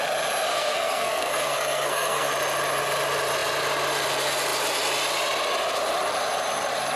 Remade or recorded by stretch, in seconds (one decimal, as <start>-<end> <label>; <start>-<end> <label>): 0.0-0.5 recorded; 0.5-2.3 remade; 2.3-7.0 recorded